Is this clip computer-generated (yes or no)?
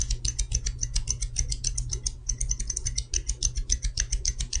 no